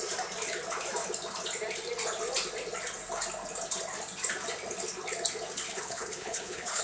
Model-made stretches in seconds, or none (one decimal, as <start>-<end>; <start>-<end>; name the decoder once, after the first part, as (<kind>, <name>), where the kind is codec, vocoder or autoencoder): 5.7-6.8 (codec, HILCodec)